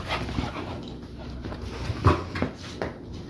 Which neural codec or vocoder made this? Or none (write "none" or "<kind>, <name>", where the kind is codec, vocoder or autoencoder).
none